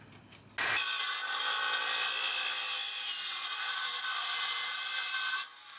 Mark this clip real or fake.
real